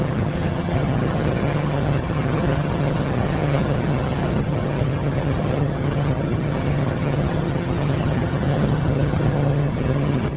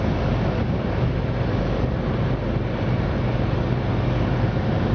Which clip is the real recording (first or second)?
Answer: second